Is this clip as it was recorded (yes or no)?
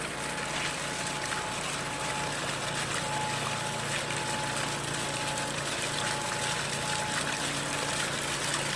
yes